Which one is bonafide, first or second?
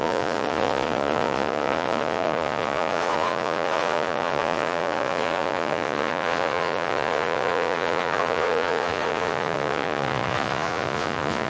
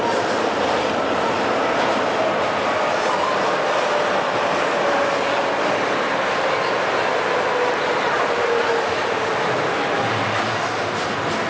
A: second